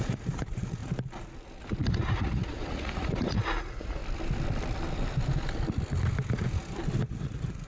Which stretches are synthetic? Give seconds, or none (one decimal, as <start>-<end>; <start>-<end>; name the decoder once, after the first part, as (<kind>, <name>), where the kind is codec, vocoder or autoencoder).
0.0-0.8 (vocoder, Vocos); 1.9-4.0; 7.1-7.7